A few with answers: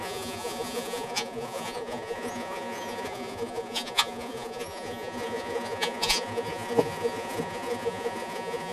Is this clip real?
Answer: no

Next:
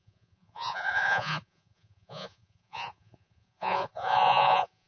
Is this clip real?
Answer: no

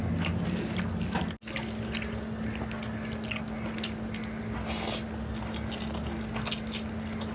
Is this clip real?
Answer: yes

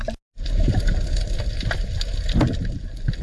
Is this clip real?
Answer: yes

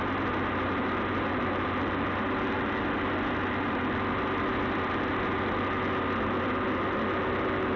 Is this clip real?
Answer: yes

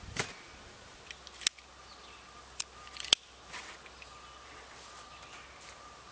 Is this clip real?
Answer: yes